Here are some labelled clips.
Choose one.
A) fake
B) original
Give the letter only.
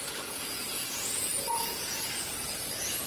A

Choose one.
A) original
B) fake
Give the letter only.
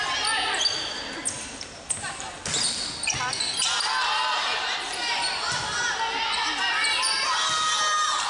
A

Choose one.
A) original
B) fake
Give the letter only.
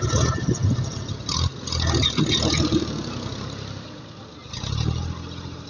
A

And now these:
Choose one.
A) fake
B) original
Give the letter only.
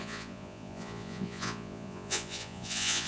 A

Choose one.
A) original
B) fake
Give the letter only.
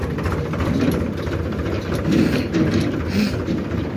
A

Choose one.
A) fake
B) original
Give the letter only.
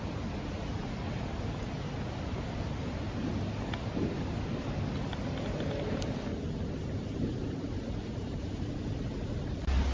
B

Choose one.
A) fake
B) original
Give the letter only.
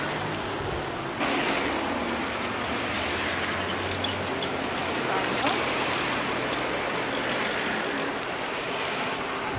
B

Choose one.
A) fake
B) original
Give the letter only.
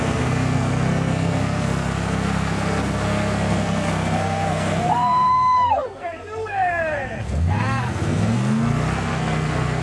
A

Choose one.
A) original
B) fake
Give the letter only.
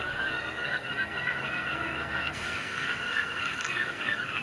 B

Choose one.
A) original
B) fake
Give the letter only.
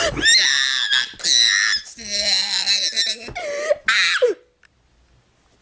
A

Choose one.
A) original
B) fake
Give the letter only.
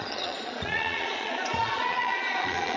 B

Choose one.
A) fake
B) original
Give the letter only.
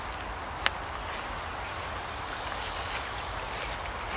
B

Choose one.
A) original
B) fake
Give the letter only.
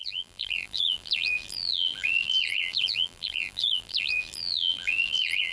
B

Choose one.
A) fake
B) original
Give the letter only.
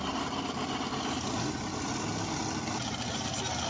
B